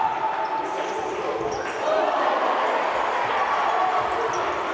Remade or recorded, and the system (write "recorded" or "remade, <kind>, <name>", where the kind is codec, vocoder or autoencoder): remade, vocoder, BigVGAN v2